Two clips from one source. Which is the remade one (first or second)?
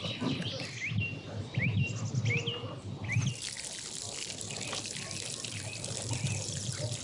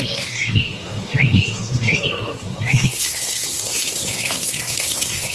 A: second